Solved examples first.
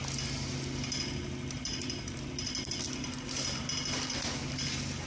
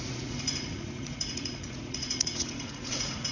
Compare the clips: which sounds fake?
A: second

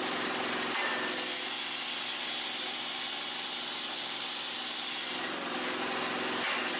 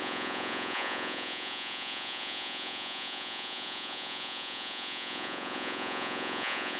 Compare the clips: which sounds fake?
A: second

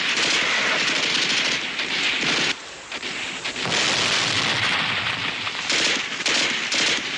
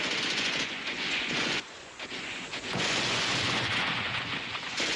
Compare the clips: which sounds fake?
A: second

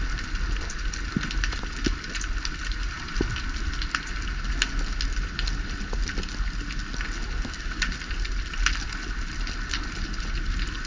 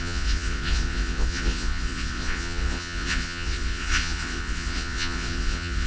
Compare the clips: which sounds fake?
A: second